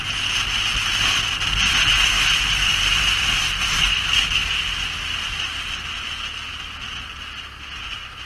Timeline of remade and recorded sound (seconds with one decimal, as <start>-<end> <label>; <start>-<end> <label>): 0.0-8.3 recorded